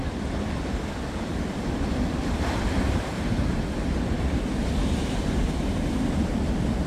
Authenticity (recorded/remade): remade